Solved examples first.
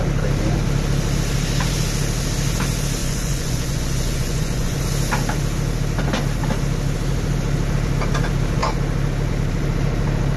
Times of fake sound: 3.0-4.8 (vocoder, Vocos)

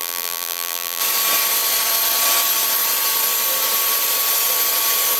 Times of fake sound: 0.0-1.0 (vocoder, BigVGAN v2)

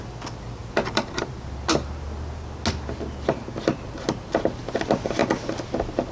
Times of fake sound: 0.6-1.3 (vocoder, BigVGAN v2)

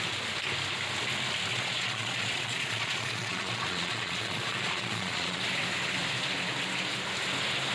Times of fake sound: 1.5-5.4 (vocoder, Vocos)

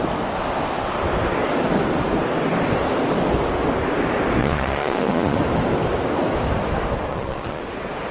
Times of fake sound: 4.4-5.4 (vocoder, Vocos); 7.1-7.6

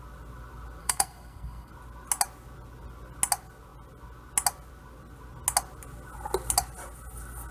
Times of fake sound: 0.8-1.7 (codec, SNAC)

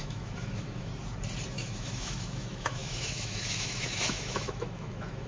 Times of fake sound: 0.0-0.9 (autoencoder, DAC-VAE); 1.5-5.3